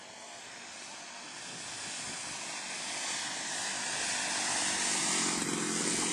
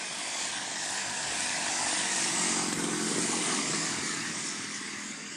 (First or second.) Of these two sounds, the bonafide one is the first